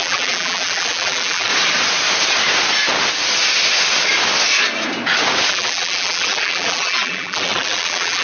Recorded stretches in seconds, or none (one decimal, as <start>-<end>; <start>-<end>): 1.5-5.5